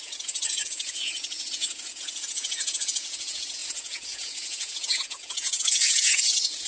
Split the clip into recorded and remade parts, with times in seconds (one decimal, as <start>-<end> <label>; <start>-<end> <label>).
0.0-6.7 remade